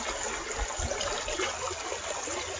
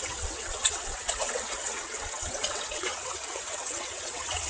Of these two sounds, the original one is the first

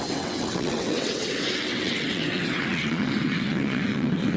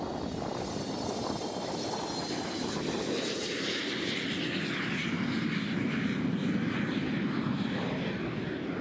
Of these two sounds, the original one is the second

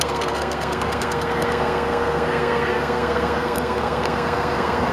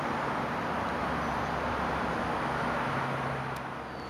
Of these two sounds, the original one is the second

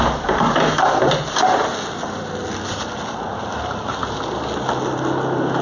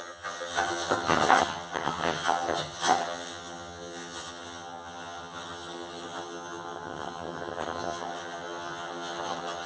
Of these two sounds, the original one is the first